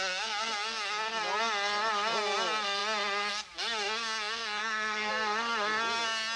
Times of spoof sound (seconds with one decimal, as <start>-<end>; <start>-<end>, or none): 4.6-5.1